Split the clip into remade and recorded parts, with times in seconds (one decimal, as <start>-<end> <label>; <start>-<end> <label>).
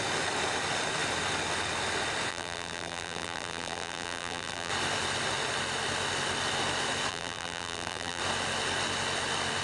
0.0-2.3 recorded; 2.3-4.7 remade; 4.7-7.1 recorded; 7.1-8.2 remade; 8.2-9.6 recorded